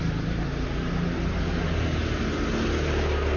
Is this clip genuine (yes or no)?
yes